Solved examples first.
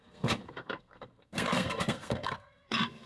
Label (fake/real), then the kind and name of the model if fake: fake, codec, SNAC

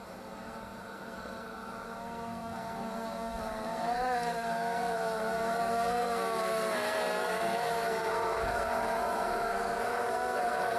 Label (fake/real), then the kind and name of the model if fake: fake, codec, SNAC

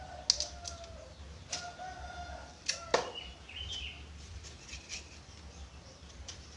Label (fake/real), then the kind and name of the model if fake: real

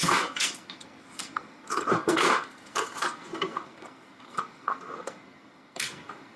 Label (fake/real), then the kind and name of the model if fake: fake, codec, SNAC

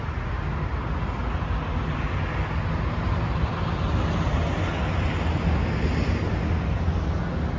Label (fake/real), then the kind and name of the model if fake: real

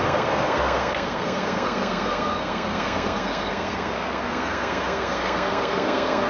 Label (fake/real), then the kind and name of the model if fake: fake, codec, SNAC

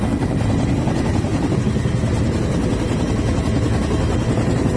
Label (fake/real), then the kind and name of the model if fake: real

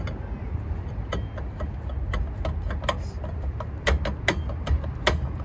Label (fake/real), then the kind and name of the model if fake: real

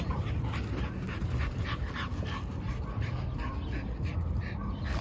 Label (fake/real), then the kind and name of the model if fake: real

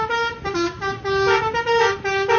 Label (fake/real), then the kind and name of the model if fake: real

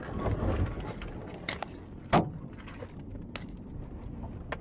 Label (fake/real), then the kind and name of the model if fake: real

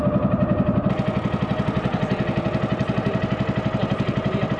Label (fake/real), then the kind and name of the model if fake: real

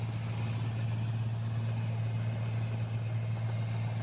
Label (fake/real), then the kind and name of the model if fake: real